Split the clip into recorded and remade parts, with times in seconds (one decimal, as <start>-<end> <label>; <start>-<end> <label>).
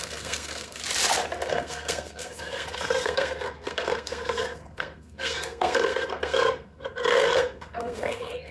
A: 0.0-0.8 remade; 0.8-1.5 recorded; 1.5-8.5 remade